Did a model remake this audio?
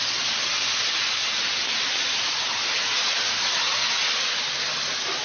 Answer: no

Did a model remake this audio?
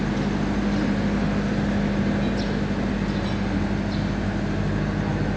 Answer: no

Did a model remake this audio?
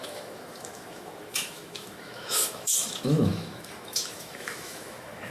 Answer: yes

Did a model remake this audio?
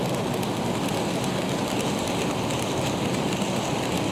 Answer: no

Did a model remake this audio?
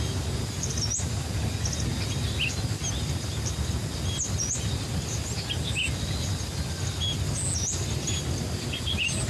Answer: no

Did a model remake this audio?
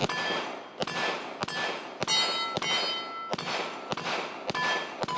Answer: no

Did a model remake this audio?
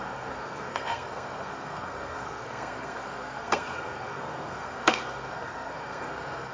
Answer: yes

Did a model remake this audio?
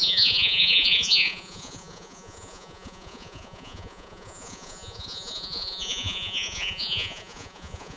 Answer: yes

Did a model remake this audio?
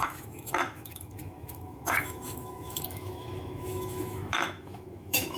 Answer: yes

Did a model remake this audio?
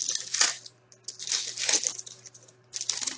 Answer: no